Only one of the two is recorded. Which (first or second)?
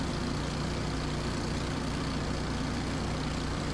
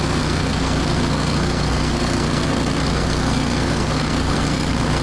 first